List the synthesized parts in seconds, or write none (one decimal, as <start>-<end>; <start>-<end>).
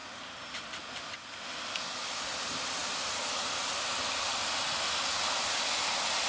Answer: none